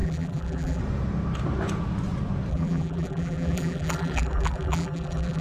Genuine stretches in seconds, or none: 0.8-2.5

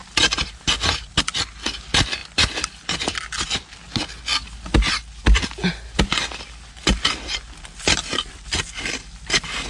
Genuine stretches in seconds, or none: 0.0-9.7

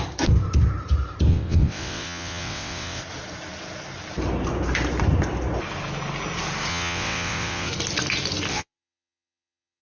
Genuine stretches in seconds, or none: 0.0-1.3; 3.0-6.7; 7.7-8.5

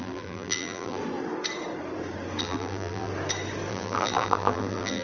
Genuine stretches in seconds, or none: 1.0-2.4; 3.1-3.7

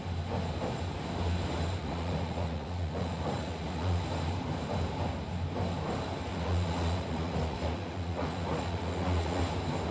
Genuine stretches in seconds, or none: 0.0-1.8; 4.0-6.3; 9.4-9.9

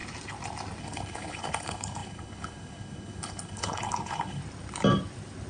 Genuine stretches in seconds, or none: 0.0-0.8; 4.4-5.5

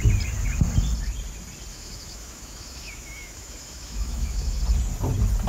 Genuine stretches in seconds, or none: 0.0-1.7; 4.6-5.5

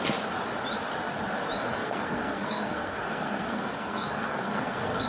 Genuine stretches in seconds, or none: 0.0-1.8